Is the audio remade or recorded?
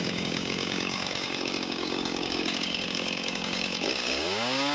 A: remade